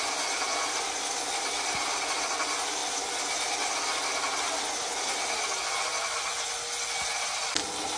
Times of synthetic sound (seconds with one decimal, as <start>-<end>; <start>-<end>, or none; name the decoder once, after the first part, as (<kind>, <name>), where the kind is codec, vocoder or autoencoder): none